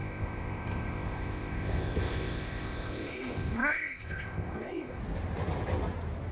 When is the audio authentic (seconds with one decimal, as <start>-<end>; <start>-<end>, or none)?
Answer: 5.0-6.3